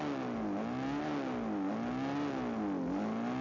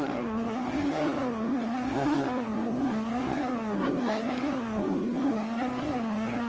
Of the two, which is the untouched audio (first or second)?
first